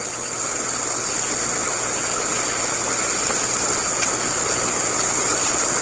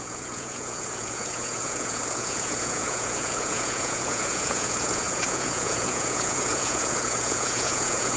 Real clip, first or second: first